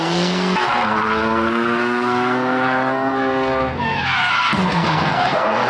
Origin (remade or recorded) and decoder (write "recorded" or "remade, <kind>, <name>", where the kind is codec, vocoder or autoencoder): remade, codec, SNAC